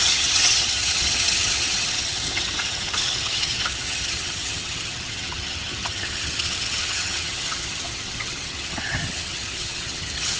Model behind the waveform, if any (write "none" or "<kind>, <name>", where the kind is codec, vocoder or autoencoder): vocoder, HiFi-GAN